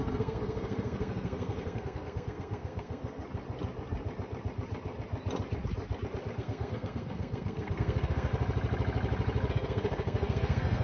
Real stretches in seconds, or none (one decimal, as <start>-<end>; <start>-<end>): 3.2-6.4; 8.3-9.5